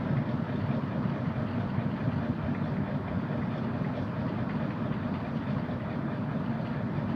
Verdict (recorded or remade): recorded